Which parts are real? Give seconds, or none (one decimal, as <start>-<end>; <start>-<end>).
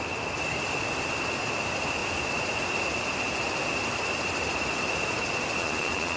0.0-5.6